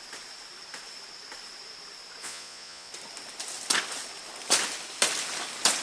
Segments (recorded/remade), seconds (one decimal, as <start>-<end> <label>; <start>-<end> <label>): 0.0-2.2 recorded; 2.2-2.9 remade; 2.9-5.8 recorded